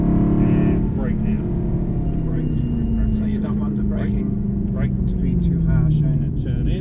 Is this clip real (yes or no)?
yes